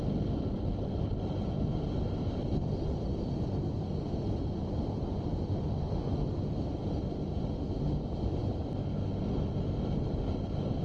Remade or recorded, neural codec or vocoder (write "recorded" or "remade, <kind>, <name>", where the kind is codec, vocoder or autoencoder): recorded